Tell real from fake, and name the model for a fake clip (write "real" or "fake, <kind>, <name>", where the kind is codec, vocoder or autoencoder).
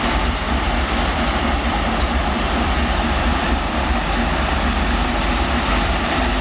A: fake, vocoder, BigVGAN v2